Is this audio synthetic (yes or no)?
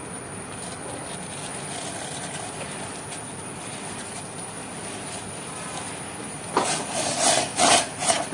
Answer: yes